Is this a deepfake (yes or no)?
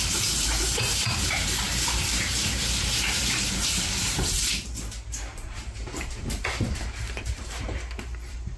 yes